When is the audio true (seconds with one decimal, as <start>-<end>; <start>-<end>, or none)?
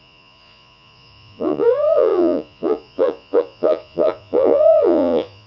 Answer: none